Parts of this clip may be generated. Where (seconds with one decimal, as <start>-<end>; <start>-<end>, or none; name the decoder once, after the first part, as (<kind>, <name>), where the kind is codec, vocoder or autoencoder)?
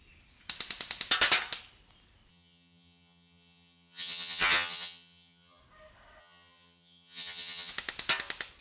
2.3-5.6 (vocoder, HiFi-GAN); 6.2-7.7